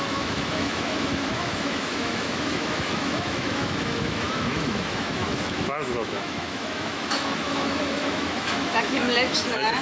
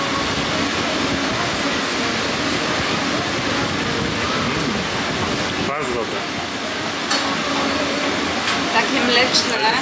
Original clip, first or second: second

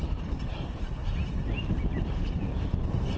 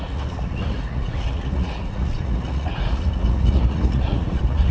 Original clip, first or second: first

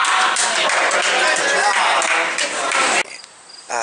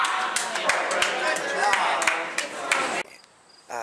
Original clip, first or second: second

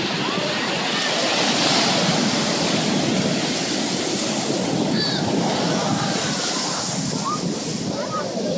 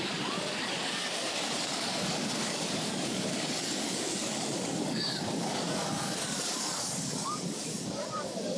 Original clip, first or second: first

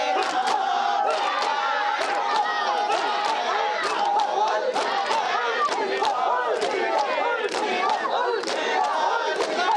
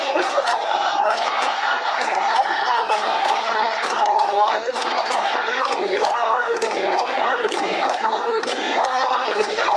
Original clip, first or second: first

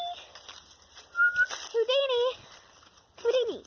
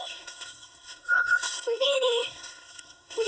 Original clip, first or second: first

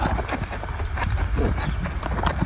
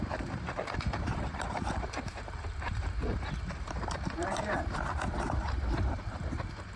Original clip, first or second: first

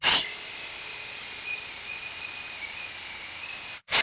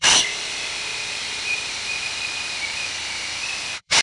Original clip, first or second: first